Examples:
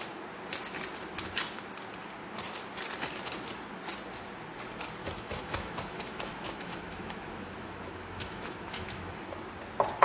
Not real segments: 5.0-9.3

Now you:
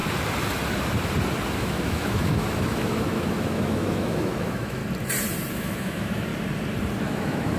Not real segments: 1.5-4.8; 5.5-6.3; 7.0-7.6